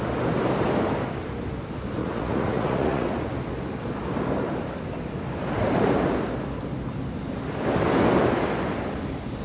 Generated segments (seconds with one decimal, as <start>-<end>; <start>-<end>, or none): 2.0-3.1